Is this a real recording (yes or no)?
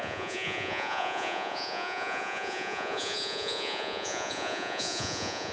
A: no